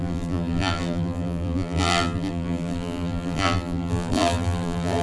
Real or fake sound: fake